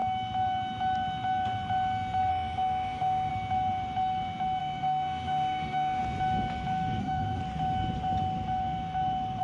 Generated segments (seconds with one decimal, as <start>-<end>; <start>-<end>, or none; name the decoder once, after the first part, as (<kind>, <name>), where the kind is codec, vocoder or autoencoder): 2.3-3.3 (autoencoder, DAC-VAE); 4.6-6.0; 7.0-7.4